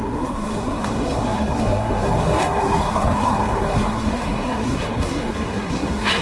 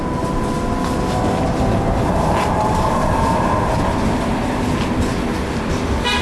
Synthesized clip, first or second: first